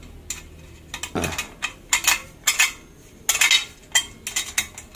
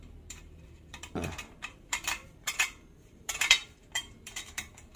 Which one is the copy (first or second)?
second